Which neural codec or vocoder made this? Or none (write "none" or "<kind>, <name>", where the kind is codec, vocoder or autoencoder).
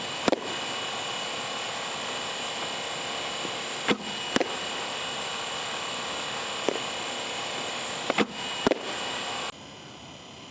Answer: none